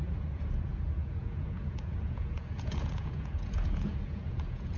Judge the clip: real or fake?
fake